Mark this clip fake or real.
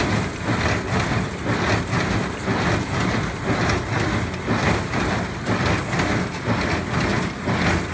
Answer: real